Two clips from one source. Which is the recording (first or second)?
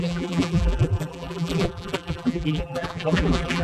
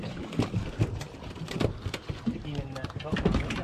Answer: second